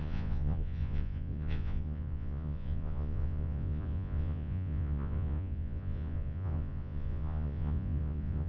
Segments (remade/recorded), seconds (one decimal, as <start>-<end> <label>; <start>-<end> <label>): 0.0-8.5 remade